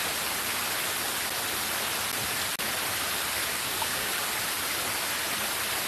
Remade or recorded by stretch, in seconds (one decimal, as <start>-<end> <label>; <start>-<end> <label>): 0.0-3.4 recorded; 3.4-4.1 remade; 4.1-5.9 recorded